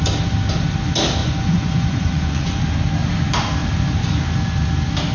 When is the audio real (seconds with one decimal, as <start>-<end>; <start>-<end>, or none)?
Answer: 0.0-1.2; 2.6-5.1